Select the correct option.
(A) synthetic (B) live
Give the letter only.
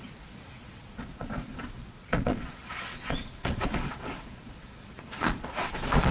A